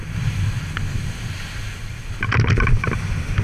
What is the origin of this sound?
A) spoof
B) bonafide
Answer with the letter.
B